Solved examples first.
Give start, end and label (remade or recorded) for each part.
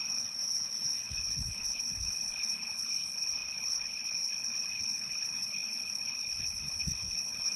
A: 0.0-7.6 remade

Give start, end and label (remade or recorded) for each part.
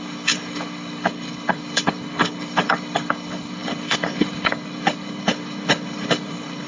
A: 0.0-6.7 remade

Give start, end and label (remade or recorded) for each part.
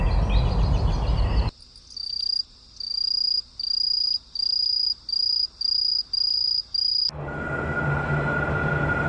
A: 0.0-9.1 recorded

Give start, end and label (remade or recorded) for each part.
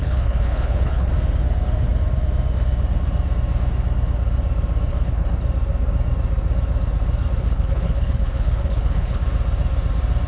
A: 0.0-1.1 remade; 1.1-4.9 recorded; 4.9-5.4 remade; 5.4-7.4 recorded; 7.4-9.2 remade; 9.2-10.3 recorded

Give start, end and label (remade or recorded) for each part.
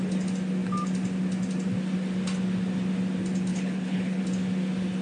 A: 0.0-3.5 recorded; 3.5-4.2 remade; 4.2-5.0 recorded